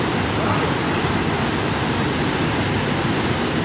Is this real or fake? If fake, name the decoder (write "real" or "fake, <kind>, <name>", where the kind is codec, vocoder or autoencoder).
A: real